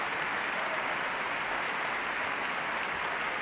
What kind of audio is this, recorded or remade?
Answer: recorded